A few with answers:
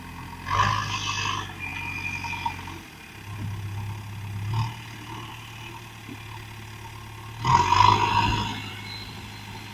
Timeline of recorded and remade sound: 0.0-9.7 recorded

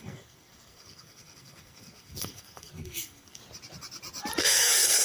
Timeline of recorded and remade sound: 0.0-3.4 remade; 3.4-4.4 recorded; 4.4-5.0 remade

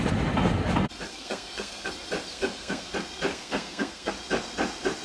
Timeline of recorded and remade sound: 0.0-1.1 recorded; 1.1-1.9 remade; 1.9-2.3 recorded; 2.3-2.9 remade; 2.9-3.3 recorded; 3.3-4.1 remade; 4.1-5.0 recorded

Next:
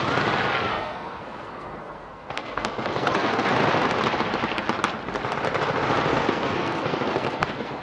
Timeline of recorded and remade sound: 0.0-0.7 recorded; 0.7-3.5 remade; 3.5-6.1 recorded; 6.1-7.8 remade